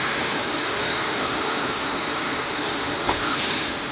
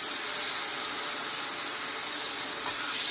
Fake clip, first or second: first